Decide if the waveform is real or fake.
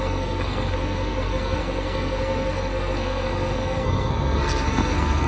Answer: fake